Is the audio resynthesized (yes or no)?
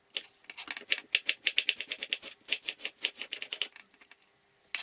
no